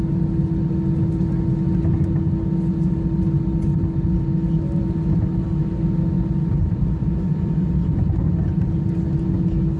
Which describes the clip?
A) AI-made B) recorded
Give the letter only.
B